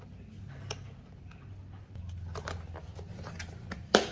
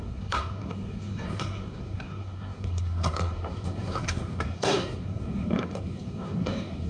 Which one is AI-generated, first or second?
second